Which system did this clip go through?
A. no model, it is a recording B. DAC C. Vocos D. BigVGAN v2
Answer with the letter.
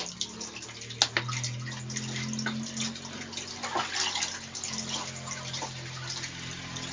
A